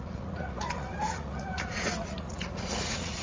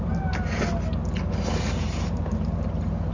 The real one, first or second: second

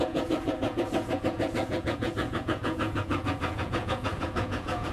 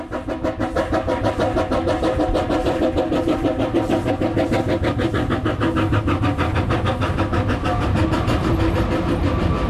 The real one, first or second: second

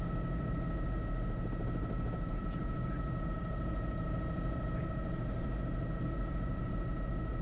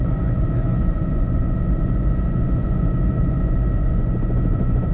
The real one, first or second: first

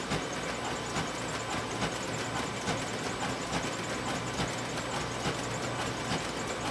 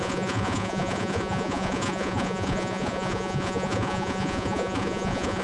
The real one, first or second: first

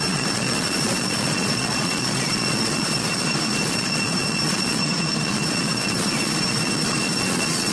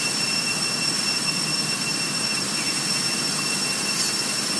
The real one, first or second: second